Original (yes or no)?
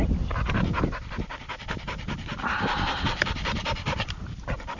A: yes